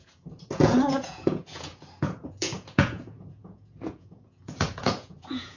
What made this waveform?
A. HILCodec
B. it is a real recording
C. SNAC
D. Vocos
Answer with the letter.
D